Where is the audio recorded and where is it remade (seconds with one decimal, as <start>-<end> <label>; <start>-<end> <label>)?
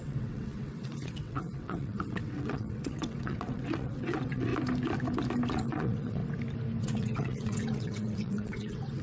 0.0-4.5 remade; 4.5-5.5 recorded; 5.5-6.2 remade; 6.2-6.8 recorded; 6.8-9.0 remade